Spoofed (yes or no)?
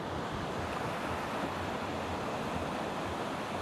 yes